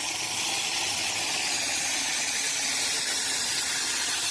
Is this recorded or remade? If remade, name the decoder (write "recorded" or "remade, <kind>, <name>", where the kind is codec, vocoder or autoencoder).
recorded